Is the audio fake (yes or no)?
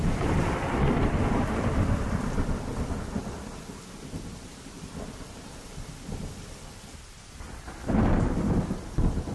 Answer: yes